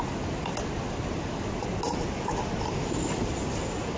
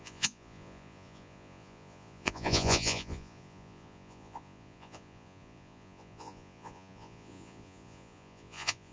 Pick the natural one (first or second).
first